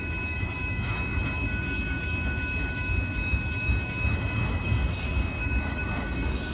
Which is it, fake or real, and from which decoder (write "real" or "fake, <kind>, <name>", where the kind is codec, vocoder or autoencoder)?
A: fake, autoencoder, DAC-VAE